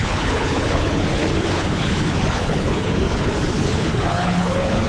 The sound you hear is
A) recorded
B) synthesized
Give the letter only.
B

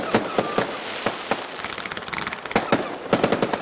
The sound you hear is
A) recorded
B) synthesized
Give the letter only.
A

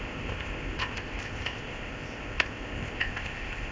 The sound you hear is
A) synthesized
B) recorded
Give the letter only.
A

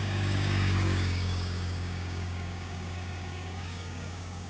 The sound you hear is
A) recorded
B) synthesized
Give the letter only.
B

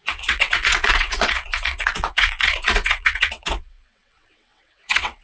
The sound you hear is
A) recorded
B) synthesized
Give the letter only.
B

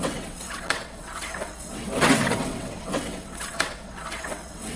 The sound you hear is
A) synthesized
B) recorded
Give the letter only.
A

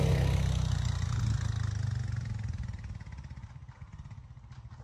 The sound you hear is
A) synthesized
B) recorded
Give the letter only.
B